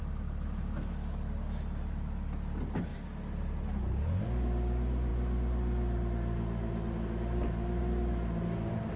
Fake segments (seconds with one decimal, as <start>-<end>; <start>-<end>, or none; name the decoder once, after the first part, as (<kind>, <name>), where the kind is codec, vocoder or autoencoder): none